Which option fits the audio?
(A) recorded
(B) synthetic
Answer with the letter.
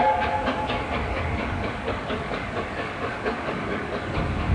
B